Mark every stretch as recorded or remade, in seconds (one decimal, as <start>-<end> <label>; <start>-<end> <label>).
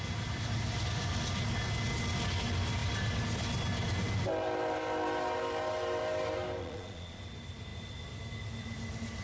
0.0-6.6 recorded; 6.6-7.2 remade; 7.2-9.2 recorded